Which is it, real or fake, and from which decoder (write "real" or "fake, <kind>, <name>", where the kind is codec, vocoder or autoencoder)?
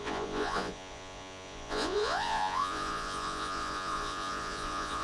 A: fake, vocoder, Vocos